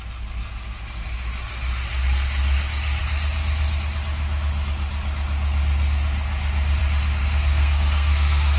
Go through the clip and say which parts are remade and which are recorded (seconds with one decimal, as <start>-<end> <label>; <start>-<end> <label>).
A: 0.0-7.2 recorded; 7.2-8.6 remade